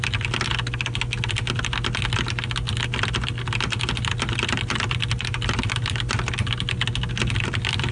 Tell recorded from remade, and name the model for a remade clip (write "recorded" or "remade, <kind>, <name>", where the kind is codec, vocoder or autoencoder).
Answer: recorded